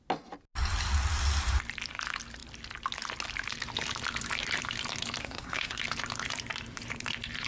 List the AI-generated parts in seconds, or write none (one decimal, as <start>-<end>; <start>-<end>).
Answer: 5.2-5.8